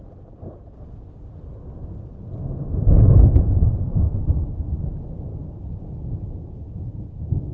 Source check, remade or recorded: recorded